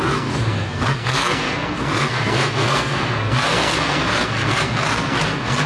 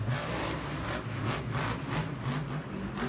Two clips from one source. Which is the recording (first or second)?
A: second